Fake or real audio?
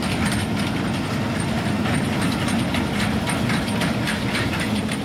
real